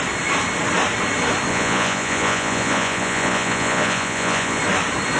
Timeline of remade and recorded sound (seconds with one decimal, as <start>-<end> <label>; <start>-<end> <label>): 0.0-1.5 recorded; 1.5-4.6 remade; 4.6-5.2 recorded